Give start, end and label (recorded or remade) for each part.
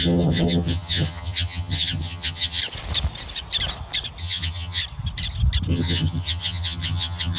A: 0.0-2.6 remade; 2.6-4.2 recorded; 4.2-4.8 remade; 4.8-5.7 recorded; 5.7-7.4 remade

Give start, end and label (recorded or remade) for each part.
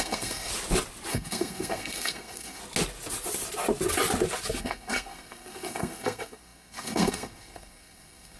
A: 0.0-0.5 remade; 0.5-1.1 recorded; 1.1-2.6 remade; 2.6-4.6 recorded; 4.6-8.4 remade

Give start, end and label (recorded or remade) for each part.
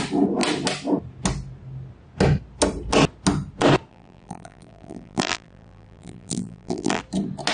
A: 0.0-3.9 recorded; 3.9-7.0 remade; 7.0-7.5 recorded